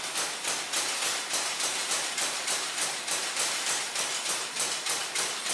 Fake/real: fake